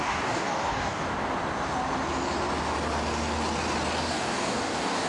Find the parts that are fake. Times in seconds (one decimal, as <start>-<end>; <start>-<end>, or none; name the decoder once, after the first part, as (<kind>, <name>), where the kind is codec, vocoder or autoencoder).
0.0-1.0 (codec, DAC); 4.0-5.1

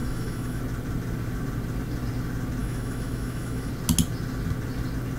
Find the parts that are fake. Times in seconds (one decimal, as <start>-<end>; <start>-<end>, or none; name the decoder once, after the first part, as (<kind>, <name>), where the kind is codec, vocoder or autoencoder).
0.0-0.6 (autoencoder, DAC-VAE); 2.6-3.7

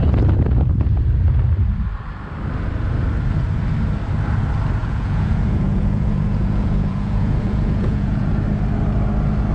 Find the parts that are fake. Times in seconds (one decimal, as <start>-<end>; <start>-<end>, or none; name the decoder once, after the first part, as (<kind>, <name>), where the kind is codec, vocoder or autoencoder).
4.8-8.3 (vocoder, Vocos)

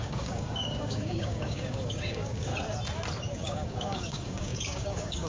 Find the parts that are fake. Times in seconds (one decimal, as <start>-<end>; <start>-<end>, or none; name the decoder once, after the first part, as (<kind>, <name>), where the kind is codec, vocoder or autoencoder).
0.0-2.5 (codec, DAC); 3.2-5.3

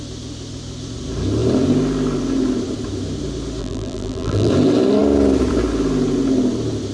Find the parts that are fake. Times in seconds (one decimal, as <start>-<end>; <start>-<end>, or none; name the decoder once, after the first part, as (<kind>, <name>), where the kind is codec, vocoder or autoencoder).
3.6-4.5 (vocoder, BigVGAN v2)

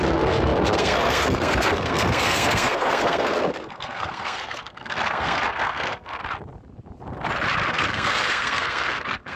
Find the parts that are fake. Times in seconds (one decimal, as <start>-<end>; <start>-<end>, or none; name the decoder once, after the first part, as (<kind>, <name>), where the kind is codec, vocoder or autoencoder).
0.0-6.2 (codec, SNAC); 7.7-9.4

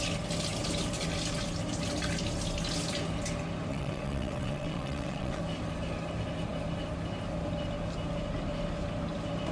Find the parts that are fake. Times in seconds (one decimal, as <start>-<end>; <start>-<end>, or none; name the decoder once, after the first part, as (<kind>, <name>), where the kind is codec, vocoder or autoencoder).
3.7-5.4 (vocoder, WaveNeXt)

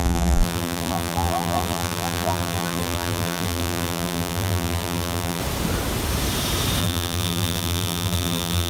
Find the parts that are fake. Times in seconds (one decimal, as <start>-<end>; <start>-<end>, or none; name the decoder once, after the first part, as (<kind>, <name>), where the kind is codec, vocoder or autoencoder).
0.0-5.4 (vocoder, BigVGAN v2); 6.8-8.7